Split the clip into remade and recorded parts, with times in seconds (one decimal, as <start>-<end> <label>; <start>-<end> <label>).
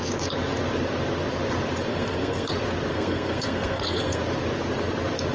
0.0-1.9 recorded; 1.9-2.5 remade; 2.5-2.9 recorded; 2.9-4.2 remade; 4.2-5.3 recorded